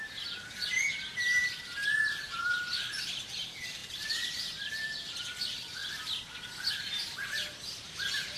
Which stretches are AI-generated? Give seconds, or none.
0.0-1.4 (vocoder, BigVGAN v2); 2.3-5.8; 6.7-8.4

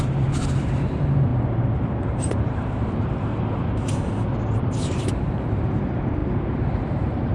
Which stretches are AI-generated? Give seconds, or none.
0.0-1.3 (vocoder, BigVGAN v2); 2.0-3.3; 4.6-7.3

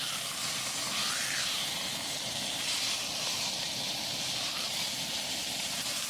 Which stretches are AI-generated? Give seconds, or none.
3.3-4.9 (vocoder, BigVGAN v2)

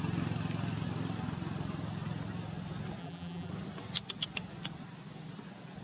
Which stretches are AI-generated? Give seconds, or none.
3.0-3.5 (vocoder, BigVGAN v2)

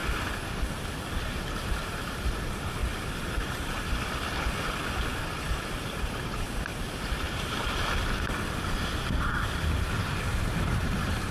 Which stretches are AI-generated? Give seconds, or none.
1.1-2.8 (vocoder, BigVGAN v2); 5.2-6.7; 9.9-11.3

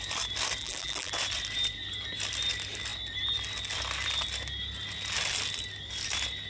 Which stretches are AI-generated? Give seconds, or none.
0.6-1.1 (vocoder, BigVGAN v2)

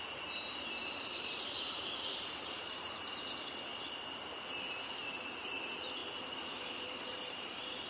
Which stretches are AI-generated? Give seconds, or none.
0.8-3.2 (vocoder, BigVGAN v2); 6.0-7.9